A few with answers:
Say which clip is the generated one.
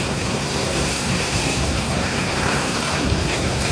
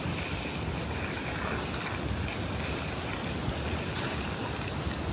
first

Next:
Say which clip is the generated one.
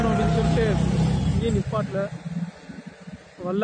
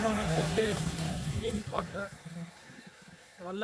second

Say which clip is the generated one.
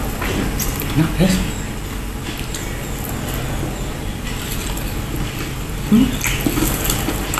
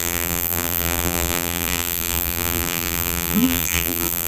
second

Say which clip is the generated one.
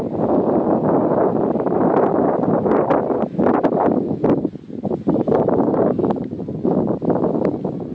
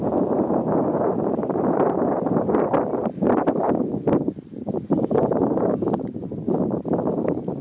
second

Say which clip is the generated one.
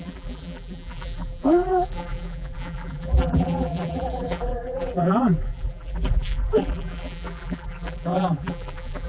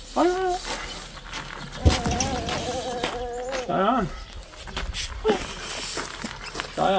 first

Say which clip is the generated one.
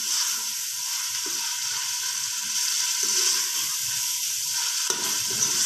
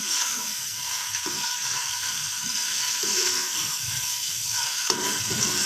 second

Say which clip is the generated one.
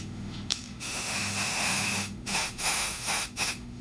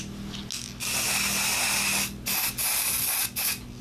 first